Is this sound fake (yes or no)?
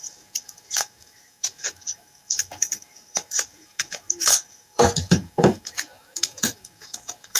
yes